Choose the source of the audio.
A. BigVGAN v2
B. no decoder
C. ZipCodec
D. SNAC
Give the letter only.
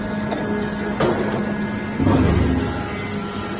B